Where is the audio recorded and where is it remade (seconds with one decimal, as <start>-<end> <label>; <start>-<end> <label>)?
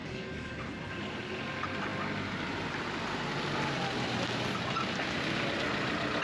0.0-0.7 remade; 0.7-6.2 recorded